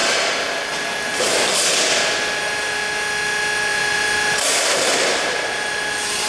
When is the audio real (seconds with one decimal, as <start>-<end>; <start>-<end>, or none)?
0.0-3.7